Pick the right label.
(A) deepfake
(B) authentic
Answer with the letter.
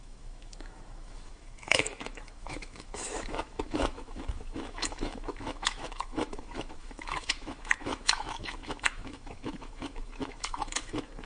A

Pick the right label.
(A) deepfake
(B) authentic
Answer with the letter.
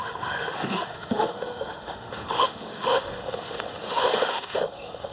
A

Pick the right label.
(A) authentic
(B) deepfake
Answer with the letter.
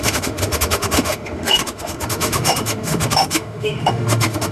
B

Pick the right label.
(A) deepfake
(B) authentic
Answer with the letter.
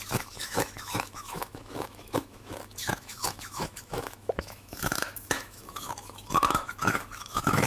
A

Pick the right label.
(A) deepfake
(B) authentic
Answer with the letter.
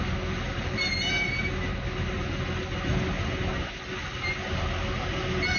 B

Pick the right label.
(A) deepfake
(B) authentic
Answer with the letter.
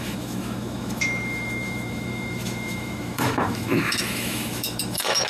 A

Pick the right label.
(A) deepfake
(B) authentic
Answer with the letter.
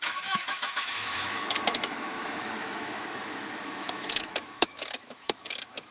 A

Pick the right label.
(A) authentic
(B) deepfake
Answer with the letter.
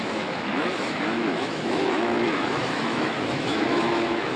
B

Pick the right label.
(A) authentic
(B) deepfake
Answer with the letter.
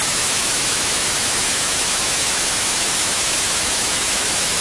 B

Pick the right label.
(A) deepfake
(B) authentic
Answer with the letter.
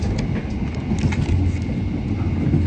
B